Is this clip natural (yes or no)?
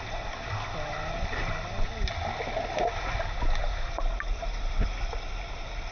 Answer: yes